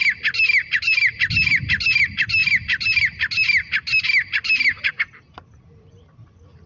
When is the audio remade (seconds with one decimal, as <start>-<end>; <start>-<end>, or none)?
none